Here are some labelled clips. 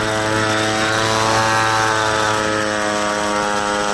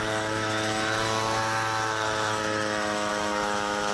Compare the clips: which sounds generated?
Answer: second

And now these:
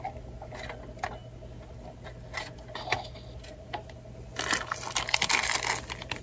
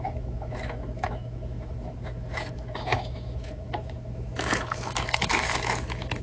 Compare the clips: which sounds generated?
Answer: second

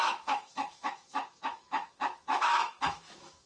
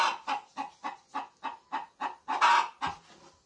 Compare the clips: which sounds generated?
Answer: first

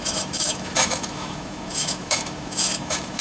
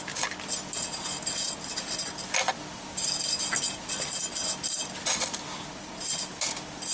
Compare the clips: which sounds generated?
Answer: first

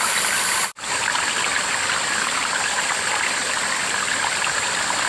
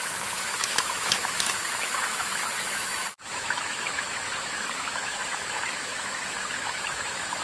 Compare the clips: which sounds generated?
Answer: second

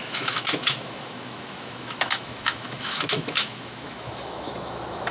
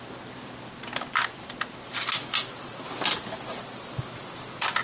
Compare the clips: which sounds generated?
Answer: first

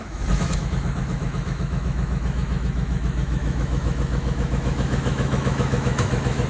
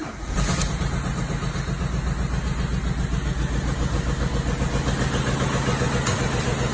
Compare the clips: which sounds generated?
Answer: first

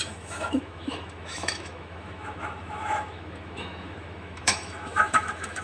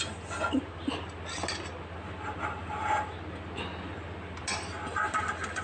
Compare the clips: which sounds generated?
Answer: first